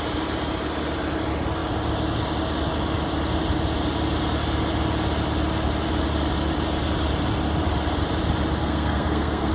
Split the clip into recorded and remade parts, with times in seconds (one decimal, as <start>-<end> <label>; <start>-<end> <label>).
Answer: 0.0-8.6 recorded; 8.6-9.5 remade